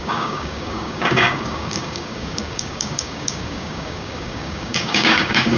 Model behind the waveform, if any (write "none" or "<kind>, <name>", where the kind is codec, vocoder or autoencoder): codec, DAC